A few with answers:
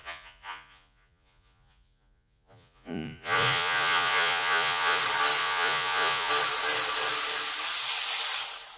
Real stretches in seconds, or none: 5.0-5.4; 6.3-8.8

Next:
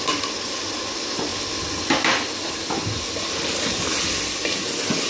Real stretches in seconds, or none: 0.0-5.1